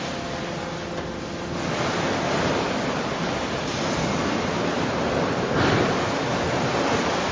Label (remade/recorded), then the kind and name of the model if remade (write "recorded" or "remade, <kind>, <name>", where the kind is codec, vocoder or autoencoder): remade, vocoder, BigVGAN v2